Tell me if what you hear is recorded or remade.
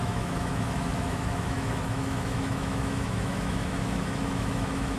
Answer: remade